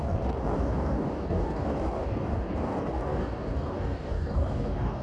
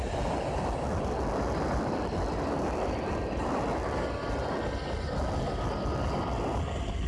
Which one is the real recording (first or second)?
second